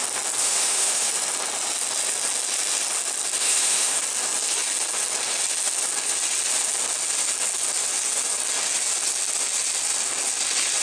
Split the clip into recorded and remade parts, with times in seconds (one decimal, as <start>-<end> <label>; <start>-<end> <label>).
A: 0.0-0.4 recorded; 0.4-1.1 remade; 1.1-3.4 recorded; 3.4-4.0 remade; 4.0-10.8 recorded